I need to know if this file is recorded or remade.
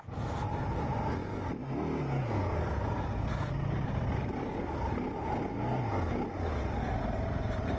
recorded